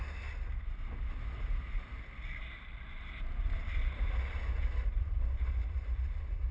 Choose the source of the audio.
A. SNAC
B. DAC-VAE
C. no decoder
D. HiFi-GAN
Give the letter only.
C